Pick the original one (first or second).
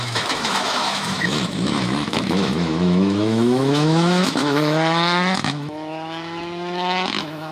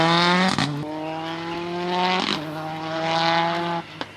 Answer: second